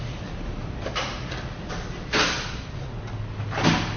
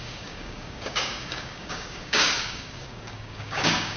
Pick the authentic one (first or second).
first